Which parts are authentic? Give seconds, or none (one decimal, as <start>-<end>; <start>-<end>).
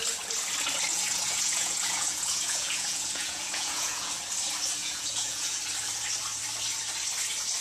0.0-0.9; 4.1-4.8; 5.6-7.6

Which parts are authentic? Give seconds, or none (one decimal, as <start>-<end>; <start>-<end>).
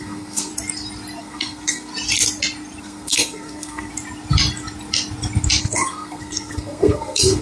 0.5-1.2; 1.9-2.8; 3.9-5.6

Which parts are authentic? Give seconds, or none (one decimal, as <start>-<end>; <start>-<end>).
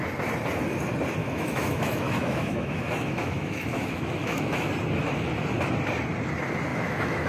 0.0-1.2; 4.7-6.7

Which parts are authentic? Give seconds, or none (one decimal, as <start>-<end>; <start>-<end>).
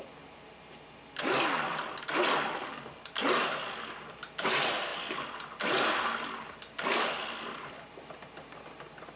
0.0-9.2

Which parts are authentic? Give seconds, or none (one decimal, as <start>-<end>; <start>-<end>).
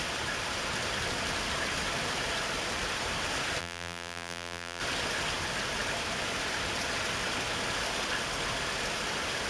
0.0-3.6; 4.8-9.5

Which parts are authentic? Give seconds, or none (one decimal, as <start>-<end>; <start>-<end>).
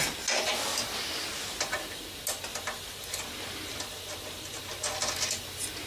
0.0-2.5; 4.6-5.9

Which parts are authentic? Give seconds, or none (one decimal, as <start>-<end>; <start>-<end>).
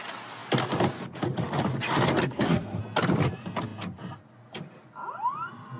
0.0-2.2; 2.8-5.8